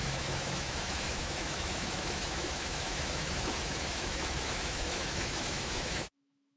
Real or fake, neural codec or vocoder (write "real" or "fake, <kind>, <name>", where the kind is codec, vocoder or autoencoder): fake, autoencoder, DAC-VAE